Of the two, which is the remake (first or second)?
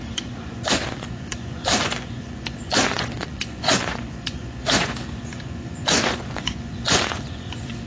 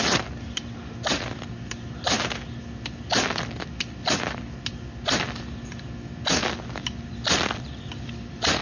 first